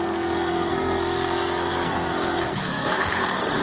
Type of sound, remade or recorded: remade